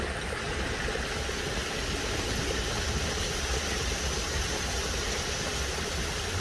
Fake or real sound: real